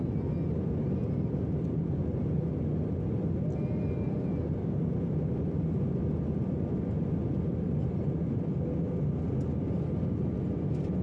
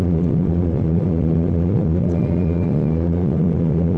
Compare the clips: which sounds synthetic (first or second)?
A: second